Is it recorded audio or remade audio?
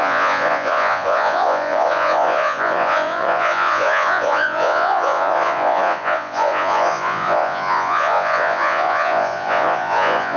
remade